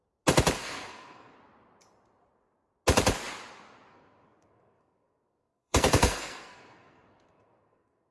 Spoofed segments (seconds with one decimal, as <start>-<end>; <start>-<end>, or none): 0.6-1.3; 3.9-8.1